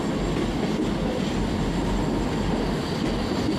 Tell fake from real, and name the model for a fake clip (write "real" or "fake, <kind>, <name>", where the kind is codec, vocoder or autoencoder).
real